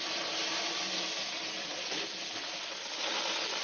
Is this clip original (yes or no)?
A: yes